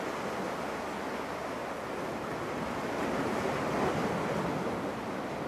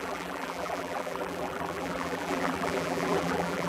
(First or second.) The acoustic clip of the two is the first